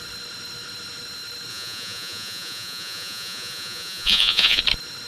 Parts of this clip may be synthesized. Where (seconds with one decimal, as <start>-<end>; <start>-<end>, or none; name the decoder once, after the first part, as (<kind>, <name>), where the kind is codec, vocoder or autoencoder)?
1.5-4.6 (vocoder, Vocos)